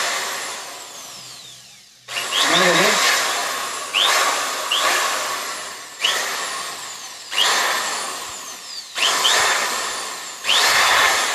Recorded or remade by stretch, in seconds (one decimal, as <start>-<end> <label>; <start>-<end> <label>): 0.0-11.3 recorded